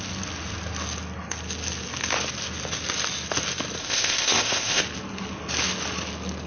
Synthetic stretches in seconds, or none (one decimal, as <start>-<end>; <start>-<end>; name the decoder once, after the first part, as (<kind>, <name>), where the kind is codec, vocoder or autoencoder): 3.8-4.8 (codec, ZipCodec)